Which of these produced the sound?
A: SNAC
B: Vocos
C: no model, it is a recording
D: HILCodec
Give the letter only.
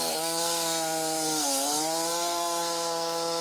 A